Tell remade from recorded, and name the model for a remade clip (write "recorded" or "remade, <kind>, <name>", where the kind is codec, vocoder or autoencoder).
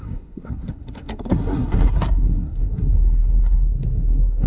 remade, codec, SNAC